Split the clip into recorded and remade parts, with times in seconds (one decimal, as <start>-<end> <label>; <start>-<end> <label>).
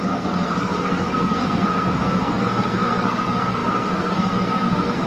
0.0-5.1 remade